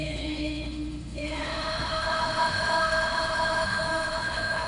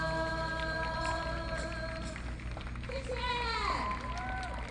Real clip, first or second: second